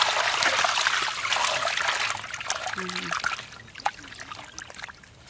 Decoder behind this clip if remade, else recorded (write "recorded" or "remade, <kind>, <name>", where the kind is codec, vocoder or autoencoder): recorded